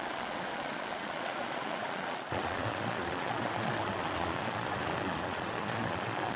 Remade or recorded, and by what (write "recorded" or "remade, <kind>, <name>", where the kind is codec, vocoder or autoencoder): remade, vocoder, Vocos